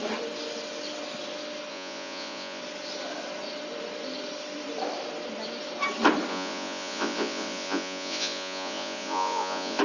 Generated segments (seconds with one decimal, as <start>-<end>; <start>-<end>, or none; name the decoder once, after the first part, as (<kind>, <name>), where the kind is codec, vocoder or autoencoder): 1.7-2.6 (vocoder, Vocos); 6.3-9.8